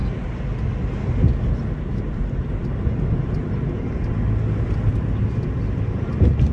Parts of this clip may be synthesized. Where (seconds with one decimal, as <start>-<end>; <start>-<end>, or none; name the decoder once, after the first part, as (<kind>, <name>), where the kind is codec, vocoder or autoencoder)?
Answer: none